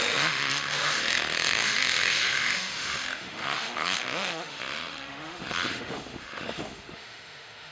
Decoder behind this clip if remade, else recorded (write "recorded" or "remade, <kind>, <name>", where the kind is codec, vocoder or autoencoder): remade, autoencoder, DAC-VAE